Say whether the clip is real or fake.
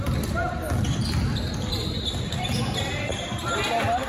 real